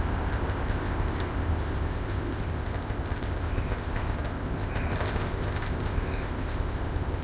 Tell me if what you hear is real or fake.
fake